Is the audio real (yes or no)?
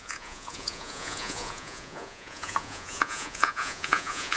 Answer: no